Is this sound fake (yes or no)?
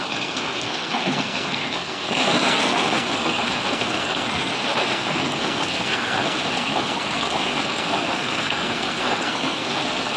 yes